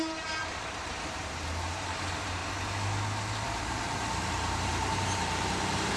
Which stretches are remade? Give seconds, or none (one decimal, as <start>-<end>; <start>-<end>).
0.0-2.4; 3.3-6.0

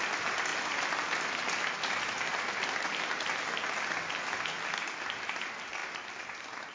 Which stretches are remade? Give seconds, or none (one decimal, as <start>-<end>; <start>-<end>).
5.8-6.7

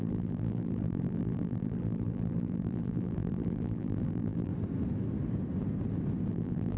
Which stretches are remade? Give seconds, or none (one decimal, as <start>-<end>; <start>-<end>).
0.0-4.5; 6.3-6.8

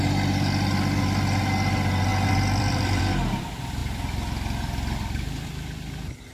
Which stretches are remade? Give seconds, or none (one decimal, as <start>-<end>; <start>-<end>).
2.1-3.0

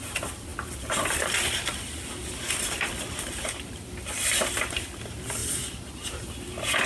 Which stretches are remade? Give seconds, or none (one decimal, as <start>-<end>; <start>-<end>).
0.0-5.4; 6.3-6.9

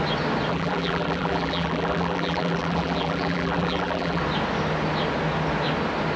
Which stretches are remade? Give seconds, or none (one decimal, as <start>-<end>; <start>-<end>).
0.5-4.2

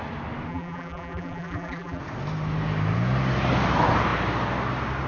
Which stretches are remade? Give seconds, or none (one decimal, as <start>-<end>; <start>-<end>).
0.5-2.0

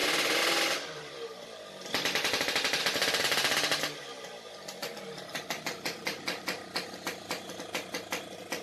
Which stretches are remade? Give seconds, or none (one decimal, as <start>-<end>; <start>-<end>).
0.0-2.8; 4.8-6.4